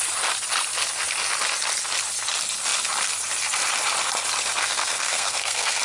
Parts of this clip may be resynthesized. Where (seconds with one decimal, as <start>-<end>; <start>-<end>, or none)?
4.6-5.8